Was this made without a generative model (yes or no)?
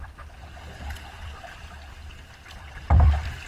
no